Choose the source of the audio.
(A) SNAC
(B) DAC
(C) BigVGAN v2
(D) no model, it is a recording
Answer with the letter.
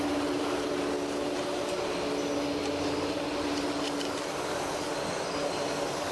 D